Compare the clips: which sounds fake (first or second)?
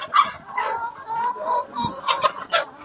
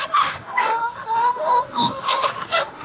second